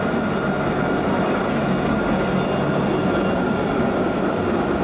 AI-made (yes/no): no